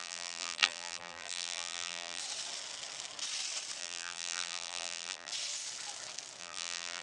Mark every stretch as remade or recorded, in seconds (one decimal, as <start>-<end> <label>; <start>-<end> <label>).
0.0-2.2 remade; 2.2-3.8 recorded; 3.8-5.3 remade; 5.3-6.4 recorded; 6.4-7.0 remade